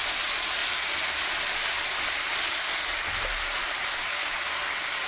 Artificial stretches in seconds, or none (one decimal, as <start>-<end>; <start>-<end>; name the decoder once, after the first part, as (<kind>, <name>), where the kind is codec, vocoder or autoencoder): 4.0-4.5 (codec, DAC)